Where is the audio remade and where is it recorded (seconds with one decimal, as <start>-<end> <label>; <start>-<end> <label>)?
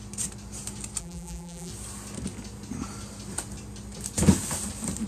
0.0-1.0 recorded; 1.0-1.7 remade; 1.7-5.1 recorded